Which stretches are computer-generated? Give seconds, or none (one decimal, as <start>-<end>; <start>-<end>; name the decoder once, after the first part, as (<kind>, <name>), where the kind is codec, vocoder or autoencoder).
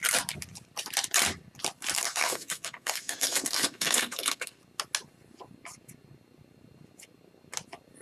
2.1-4.6 (codec, SNAC)